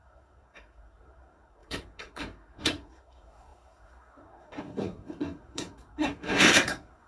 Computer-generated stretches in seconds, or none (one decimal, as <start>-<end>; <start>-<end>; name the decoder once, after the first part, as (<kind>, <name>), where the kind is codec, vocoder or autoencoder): 0.0-7.1 (codec, SNAC)